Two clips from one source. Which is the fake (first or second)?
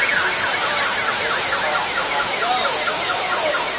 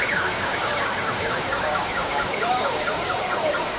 second